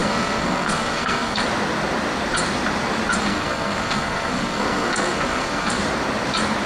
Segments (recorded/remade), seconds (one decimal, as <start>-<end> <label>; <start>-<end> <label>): 0.0-1.4 remade; 1.4-3.2 recorded; 3.2-5.8 remade; 5.8-6.7 recorded